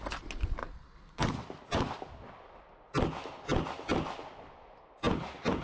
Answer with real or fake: real